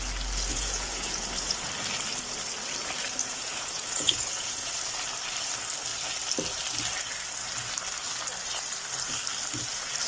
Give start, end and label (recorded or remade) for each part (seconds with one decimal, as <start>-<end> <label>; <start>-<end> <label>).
0.0-0.5 recorded; 0.5-1.7 remade; 1.7-3.2 recorded; 3.2-4.7 remade; 4.7-10.1 recorded